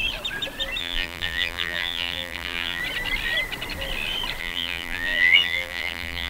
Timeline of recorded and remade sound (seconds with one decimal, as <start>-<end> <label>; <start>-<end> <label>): 0.0-0.8 recorded; 0.8-2.8 remade; 2.8-4.4 recorded; 4.4-6.3 remade